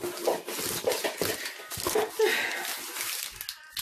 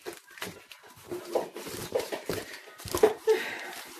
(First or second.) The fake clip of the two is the second